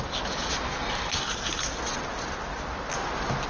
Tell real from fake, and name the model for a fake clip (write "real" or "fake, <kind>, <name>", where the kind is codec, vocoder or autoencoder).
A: real